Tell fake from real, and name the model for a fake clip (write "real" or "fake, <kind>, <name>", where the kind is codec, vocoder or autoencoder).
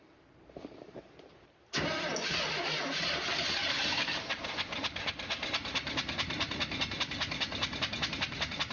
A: fake, vocoder, BigVGAN v2